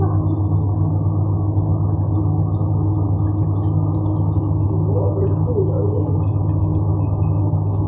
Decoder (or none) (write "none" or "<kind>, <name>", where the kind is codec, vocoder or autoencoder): autoencoder, DAC-VAE